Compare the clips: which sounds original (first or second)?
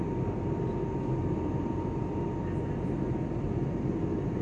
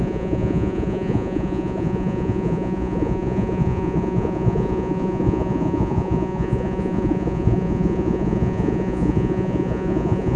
first